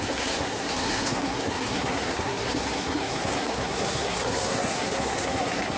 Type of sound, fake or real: fake